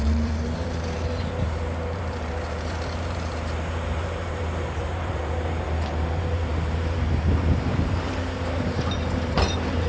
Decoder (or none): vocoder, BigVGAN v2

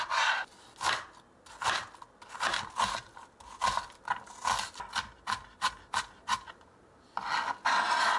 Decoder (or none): none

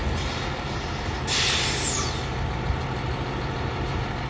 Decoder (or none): none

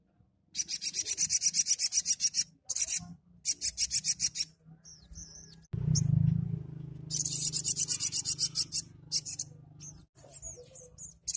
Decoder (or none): none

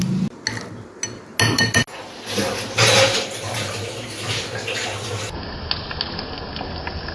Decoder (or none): none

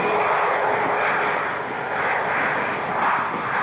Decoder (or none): none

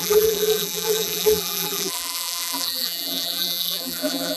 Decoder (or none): vocoder, BigVGAN v2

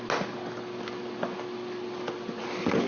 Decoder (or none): none